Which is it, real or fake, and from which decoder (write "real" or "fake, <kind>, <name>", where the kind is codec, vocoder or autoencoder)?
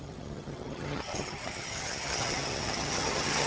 fake, vocoder, HiFi-GAN